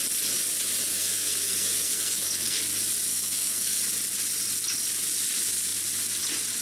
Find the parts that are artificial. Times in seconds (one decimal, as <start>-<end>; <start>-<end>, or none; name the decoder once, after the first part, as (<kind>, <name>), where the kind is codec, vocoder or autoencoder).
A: 0.9-2.6 (codec, SNAC); 3.1-3.8